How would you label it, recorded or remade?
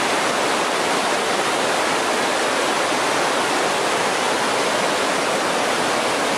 recorded